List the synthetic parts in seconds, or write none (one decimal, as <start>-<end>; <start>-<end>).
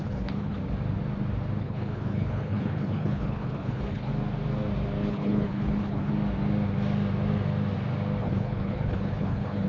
0.0-0.6; 1.6-4.1; 5.1-6.1; 8.2-9.7